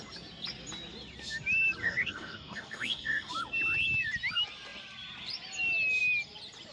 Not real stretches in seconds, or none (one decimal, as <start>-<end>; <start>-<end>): 1.8-3.3